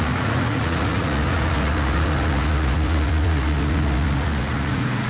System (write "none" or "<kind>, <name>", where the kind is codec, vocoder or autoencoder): vocoder, Vocos